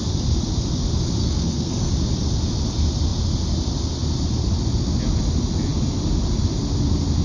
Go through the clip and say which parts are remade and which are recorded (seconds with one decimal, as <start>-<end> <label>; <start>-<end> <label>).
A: 0.0-1.2 recorded; 1.2-1.9 remade; 1.9-7.2 recorded